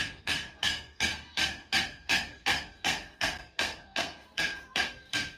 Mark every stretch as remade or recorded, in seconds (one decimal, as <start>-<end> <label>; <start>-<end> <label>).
0.0-5.4 remade